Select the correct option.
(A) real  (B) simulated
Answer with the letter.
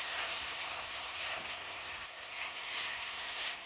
B